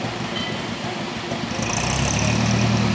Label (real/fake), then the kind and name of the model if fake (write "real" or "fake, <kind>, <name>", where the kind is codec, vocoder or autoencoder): real